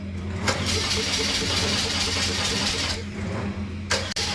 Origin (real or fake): real